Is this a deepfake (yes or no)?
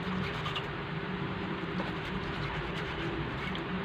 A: yes